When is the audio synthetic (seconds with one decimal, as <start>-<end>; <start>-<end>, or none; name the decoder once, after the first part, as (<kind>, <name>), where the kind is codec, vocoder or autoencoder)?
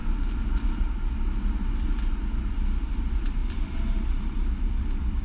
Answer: 2.5-5.2 (vocoder, BigVGAN v2)